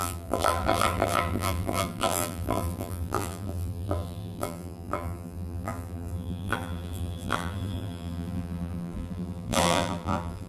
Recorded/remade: remade